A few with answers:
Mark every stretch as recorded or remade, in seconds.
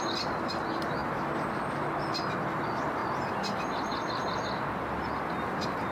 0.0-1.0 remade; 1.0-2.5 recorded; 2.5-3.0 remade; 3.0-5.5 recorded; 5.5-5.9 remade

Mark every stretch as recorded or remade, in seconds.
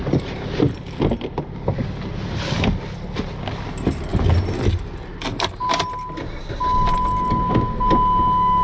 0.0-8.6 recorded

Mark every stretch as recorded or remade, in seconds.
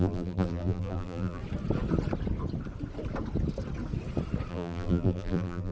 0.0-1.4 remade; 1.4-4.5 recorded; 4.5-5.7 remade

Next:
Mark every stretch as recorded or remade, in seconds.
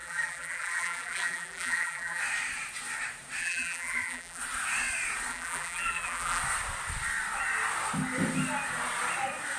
0.0-2.2 remade; 2.2-3.4 recorded; 3.4-4.4 remade; 4.4-5.3 recorded; 5.3-6.4 remade; 6.4-9.6 recorded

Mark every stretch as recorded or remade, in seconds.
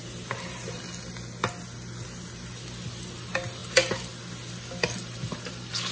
0.0-0.8 remade; 0.8-5.9 recorded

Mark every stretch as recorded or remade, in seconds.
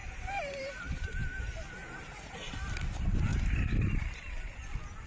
0.0-1.4 remade; 1.4-1.8 recorded; 1.8-2.4 remade; 2.4-3.3 recorded; 3.3-4.6 remade; 4.6-5.1 recorded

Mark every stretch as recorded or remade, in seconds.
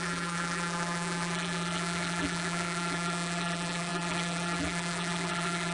0.0-5.7 remade